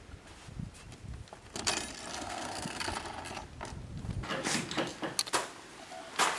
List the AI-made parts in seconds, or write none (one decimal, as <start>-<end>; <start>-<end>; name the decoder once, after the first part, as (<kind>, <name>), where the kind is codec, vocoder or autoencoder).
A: 2.1-2.9 (codec, SNAC)